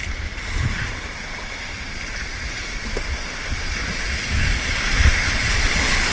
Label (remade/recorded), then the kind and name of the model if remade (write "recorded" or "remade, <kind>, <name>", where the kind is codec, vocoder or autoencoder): recorded